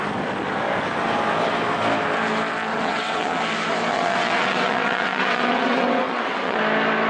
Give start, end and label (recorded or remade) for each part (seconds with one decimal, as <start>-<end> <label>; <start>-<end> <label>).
0.0-2.7 recorded; 2.7-3.4 remade; 3.4-3.9 recorded; 3.9-6.6 remade; 6.6-7.1 recorded